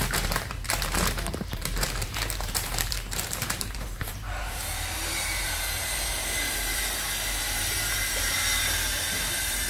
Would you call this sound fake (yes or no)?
yes